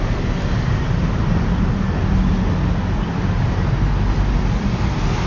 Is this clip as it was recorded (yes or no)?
yes